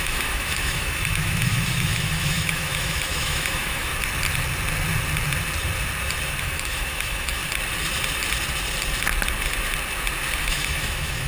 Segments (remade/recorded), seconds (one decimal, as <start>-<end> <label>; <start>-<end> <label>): 0.0-3.9 remade; 3.9-6.4 recorded; 6.4-7.4 remade; 7.4-10.4 recorded; 10.4-11.3 remade

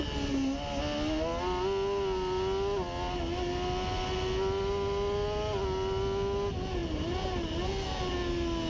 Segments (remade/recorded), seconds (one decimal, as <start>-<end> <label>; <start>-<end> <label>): 0.0-8.7 recorded

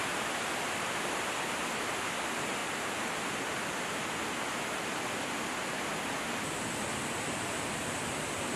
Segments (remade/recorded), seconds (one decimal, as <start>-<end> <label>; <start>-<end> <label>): 0.0-8.6 remade

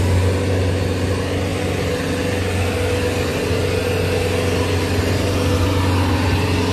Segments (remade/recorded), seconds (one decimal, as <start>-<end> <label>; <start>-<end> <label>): 0.0-6.7 recorded

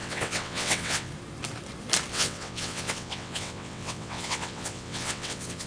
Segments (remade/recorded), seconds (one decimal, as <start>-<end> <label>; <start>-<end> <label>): 0.0-1.1 remade; 1.1-2.1 recorded; 2.1-5.7 remade

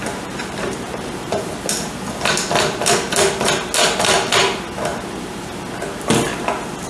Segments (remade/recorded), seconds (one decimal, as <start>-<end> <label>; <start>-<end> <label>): 0.0-1.4 remade; 1.4-4.9 recorded; 4.9-5.6 remade; 5.6-6.9 recorded